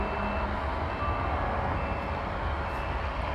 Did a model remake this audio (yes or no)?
no